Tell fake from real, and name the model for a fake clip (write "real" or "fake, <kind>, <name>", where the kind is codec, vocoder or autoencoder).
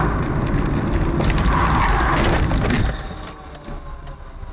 real